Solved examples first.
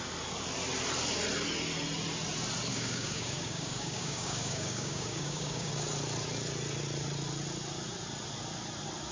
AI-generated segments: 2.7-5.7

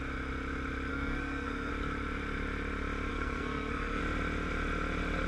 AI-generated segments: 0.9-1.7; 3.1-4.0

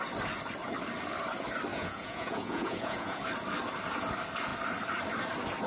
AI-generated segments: 1.7-3.2

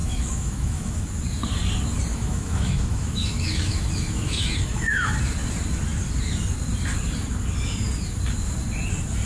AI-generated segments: 0.0-1.1; 2.1-5.1

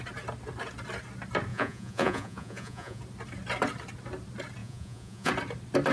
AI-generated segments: 1.5-3.0; 4.6-5.3